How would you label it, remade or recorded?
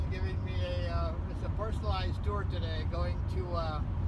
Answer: recorded